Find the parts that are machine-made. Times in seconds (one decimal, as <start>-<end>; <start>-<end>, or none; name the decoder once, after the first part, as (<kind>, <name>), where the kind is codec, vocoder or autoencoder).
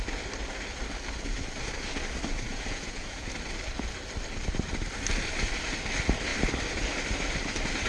2.5-3.3 (vocoder, Vocos)